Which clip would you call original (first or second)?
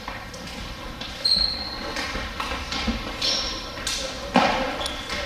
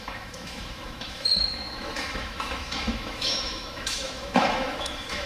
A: first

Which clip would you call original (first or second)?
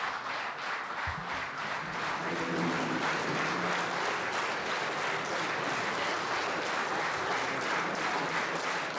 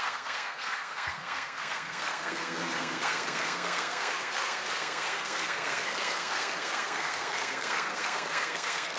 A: first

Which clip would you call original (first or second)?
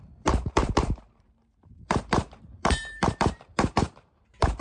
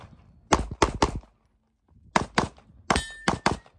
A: second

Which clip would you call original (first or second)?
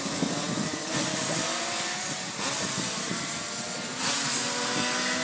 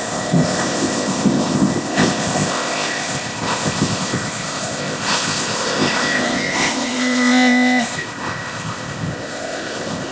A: first